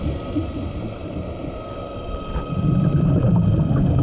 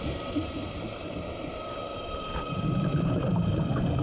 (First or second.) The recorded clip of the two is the first